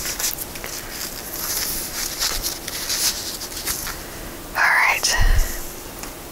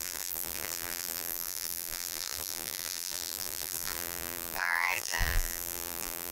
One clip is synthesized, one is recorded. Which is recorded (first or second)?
first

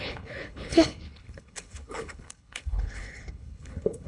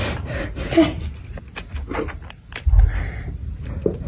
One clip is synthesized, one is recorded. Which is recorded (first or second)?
second